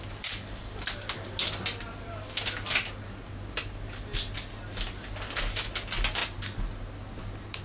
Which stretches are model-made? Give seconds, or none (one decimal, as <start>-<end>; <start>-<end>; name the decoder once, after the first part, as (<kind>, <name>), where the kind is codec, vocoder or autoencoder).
none